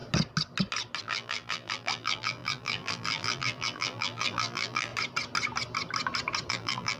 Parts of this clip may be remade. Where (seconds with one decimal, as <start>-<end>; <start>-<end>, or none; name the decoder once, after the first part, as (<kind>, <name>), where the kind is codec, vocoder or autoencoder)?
1.0-4.9 (vocoder, BigVGAN v2); 6.5-7.0